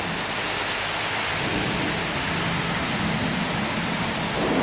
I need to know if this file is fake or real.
real